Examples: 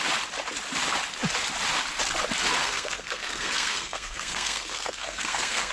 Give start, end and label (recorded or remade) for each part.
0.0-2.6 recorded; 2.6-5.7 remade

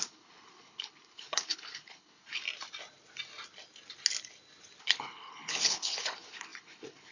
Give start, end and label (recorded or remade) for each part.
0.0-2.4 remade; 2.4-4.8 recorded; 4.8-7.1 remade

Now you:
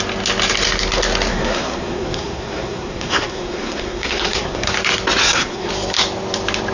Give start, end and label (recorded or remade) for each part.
0.0-1.3 recorded; 1.3-4.7 remade; 4.7-5.2 recorded; 5.2-5.7 remade; 5.7-6.7 recorded

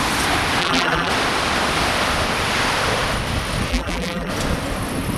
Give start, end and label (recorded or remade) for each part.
0.0-0.6 recorded; 0.6-1.1 remade; 1.1-3.7 recorded; 3.7-4.3 remade; 4.3-5.2 recorded